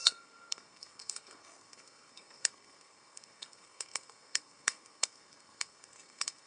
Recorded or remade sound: remade